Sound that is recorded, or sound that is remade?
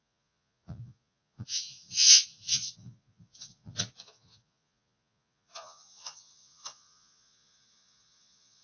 remade